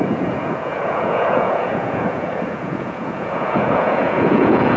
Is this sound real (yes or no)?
no